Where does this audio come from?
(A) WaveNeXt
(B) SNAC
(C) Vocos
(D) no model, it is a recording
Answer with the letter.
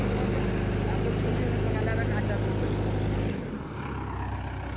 D